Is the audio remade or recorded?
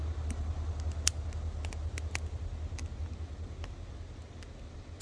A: recorded